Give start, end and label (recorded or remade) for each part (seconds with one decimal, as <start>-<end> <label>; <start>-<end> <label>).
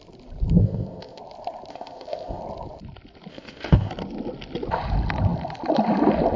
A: 0.0-0.6 recorded; 0.6-1.2 remade; 1.2-1.7 recorded; 1.7-2.4 remade; 2.4-3.3 recorded; 3.3-3.9 remade; 3.9-6.4 recorded